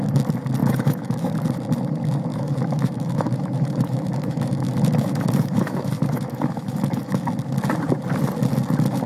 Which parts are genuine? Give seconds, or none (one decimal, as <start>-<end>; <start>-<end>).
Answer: 0.0-0.6; 1.3-2.3; 7.3-9.1